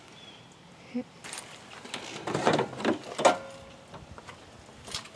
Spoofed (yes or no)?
no